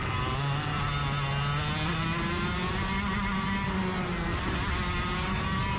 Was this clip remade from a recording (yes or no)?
no